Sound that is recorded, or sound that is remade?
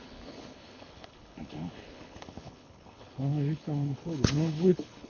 remade